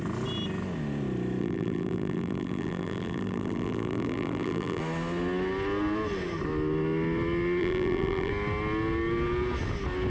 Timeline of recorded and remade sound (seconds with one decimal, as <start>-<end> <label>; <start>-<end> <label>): 0.0-1.4 recorded; 1.4-4.8 remade; 4.8-7.6 recorded; 7.6-8.3 remade; 8.3-10.1 recorded